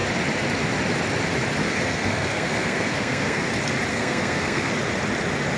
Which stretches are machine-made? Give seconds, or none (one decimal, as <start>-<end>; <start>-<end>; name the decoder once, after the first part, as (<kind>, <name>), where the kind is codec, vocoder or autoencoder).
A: 1.6-3.5 (codec, SNAC); 3.9-4.7